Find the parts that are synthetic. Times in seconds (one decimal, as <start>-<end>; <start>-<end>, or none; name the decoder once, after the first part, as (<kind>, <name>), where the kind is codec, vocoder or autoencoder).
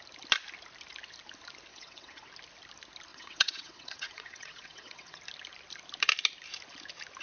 1.7-2.3 (vocoder, WaveNeXt); 3.1-5.2